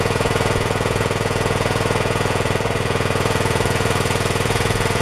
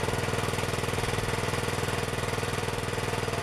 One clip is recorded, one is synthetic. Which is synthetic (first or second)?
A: first